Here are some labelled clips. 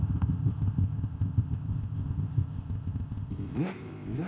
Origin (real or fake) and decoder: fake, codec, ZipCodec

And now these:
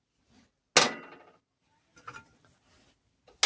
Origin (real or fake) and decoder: real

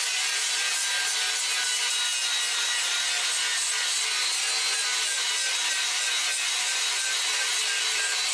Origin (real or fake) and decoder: real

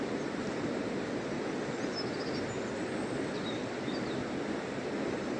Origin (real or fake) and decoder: real